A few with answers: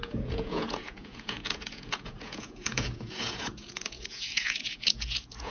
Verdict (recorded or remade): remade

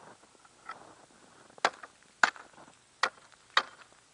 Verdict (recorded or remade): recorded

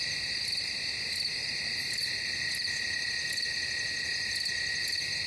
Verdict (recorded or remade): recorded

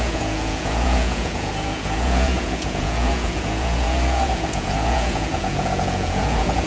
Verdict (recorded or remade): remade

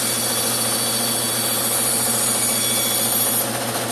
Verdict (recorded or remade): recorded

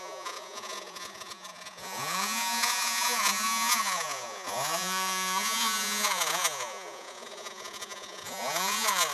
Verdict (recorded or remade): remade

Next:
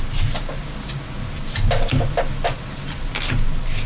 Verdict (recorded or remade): recorded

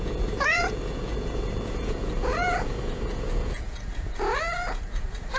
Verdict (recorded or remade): remade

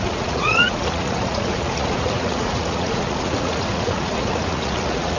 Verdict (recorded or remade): remade